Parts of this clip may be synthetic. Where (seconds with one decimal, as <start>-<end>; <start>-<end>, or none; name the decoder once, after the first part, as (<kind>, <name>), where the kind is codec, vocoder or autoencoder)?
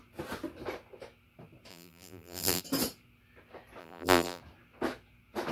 1.7-2.6 (vocoder, BigVGAN v2); 3.8-4.4